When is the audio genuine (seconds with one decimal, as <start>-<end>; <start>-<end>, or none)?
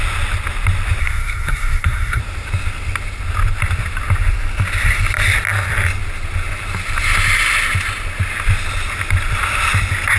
0.0-1.0; 2.2-10.2